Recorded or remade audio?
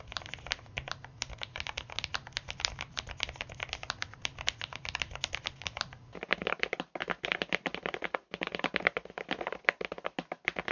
recorded